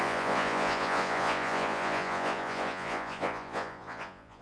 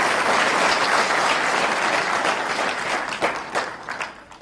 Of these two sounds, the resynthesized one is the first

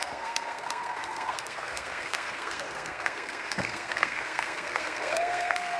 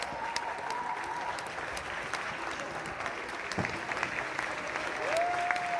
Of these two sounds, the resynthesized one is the first